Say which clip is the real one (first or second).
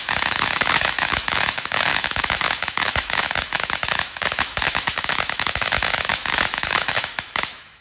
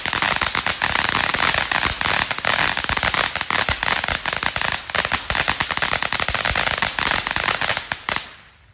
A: second